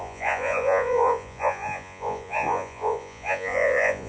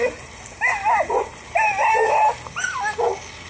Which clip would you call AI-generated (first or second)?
first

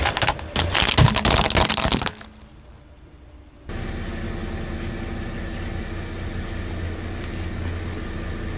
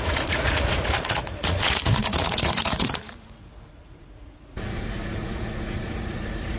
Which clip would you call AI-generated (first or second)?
second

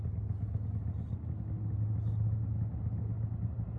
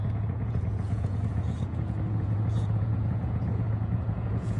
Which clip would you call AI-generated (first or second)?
second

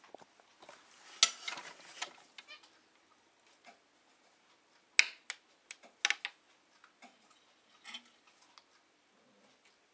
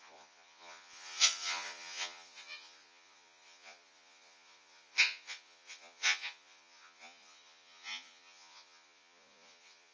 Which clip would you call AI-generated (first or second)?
second